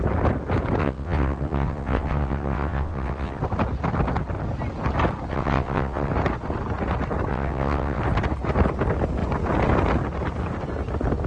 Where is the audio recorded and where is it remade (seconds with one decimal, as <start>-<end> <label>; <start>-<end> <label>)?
0.0-0.8 recorded; 0.8-3.4 remade; 3.4-5.3 recorded; 5.3-6.1 remade; 6.1-7.3 recorded; 7.3-8.0 remade; 8.0-11.3 recorded